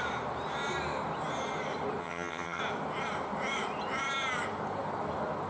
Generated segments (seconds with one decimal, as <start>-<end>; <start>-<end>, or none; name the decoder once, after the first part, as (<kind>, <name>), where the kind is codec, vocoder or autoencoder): 2.0-2.6 (vocoder, HiFi-GAN)